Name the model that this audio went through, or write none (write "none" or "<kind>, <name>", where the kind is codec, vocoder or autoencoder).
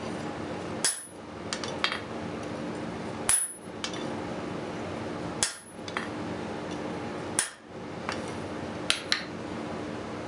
none